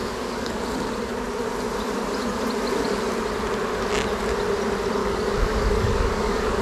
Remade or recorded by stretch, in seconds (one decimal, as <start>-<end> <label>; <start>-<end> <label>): 0.0-0.6 remade; 0.6-5.0 recorded; 5.0-6.6 remade